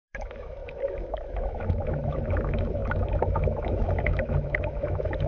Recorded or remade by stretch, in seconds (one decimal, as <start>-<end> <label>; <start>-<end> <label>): 0.0-5.3 remade